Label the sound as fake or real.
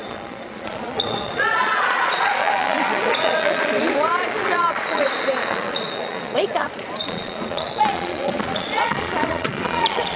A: fake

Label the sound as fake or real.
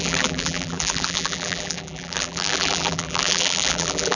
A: fake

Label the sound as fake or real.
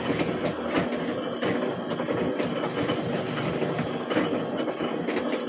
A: real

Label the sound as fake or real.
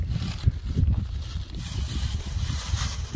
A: real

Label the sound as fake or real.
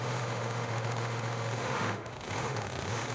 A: fake